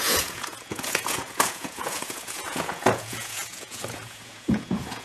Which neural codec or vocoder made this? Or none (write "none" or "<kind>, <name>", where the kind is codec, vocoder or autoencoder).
vocoder, Vocos